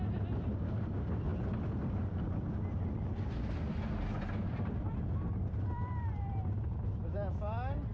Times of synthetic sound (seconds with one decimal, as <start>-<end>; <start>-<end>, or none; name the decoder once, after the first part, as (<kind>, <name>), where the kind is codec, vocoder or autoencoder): none